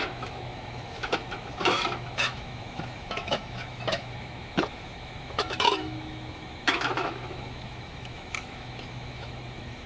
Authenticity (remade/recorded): remade